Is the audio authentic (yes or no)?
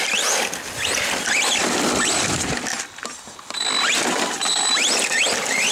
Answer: yes